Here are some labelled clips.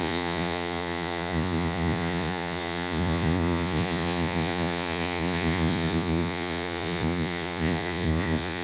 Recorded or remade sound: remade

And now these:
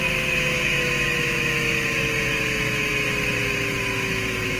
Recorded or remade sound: remade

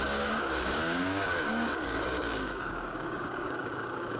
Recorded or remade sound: remade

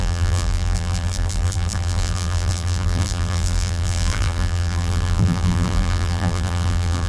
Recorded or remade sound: remade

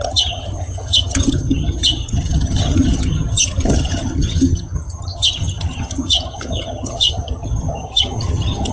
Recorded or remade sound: remade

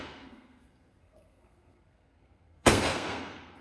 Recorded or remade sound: remade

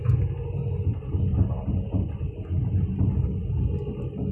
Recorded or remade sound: recorded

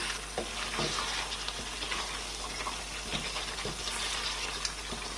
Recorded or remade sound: recorded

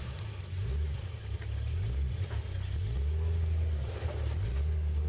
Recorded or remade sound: recorded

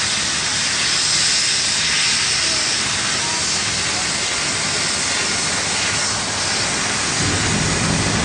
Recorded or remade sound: recorded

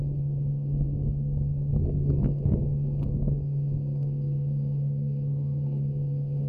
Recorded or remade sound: remade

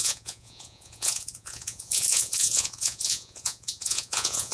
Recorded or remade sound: remade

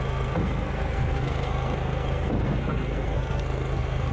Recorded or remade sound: remade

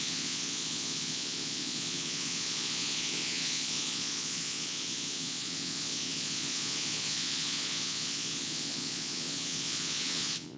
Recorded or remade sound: remade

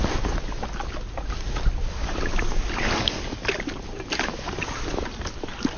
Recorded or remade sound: recorded